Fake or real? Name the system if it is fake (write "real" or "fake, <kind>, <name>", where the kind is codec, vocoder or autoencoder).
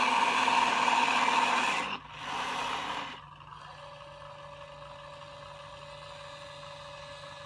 real